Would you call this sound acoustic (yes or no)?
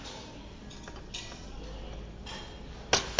yes